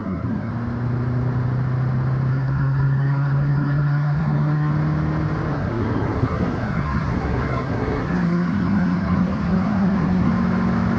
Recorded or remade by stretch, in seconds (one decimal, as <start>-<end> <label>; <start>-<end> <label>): 0.0-0.5 remade; 0.5-2.3 recorded; 2.3-4.7 remade; 4.7-5.5 recorded; 5.5-10.3 remade; 10.3-11.0 recorded